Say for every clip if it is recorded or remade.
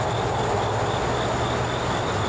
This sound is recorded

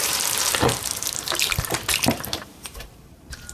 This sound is remade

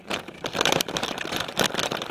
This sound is remade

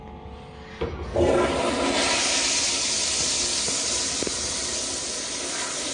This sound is recorded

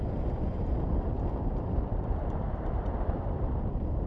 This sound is remade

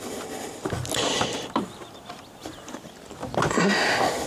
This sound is remade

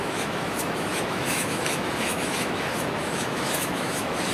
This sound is remade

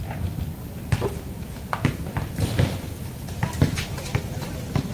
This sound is recorded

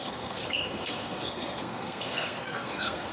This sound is remade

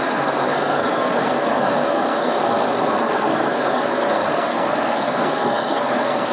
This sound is remade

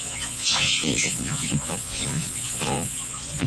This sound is remade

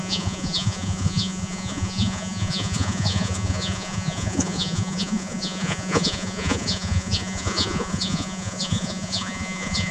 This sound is remade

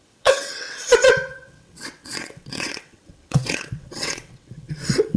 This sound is remade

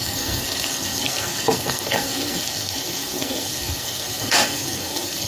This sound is remade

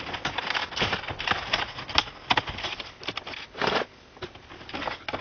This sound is recorded